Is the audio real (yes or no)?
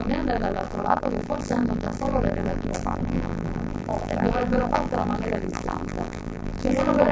no